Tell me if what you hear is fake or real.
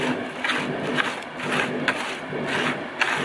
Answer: real